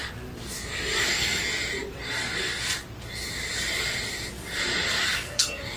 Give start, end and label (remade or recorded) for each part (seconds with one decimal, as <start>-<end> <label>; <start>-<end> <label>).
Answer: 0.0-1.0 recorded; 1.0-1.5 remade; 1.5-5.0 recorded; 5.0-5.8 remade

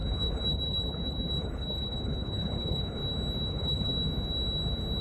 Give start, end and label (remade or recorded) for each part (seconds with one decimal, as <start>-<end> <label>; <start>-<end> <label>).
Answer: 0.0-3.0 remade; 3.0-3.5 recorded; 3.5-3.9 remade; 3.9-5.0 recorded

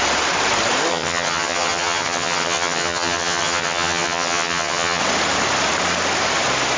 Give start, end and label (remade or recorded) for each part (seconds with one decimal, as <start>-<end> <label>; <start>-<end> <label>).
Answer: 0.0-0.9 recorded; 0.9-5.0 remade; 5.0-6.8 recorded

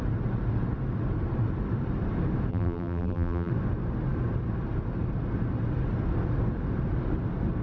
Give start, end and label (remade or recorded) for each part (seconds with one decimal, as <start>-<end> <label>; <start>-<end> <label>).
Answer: 0.0-2.5 recorded; 2.5-3.5 remade; 3.5-7.6 recorded

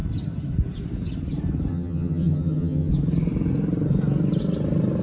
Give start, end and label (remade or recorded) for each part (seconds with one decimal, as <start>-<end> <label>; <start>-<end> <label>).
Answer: 0.0-1.7 recorded; 1.7-2.9 remade; 2.9-5.0 recorded

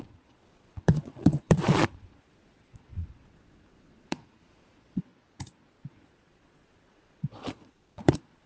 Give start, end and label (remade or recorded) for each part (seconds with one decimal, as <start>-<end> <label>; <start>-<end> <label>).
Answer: 0.0-5.1 remade; 5.1-5.9 recorded; 5.9-8.5 remade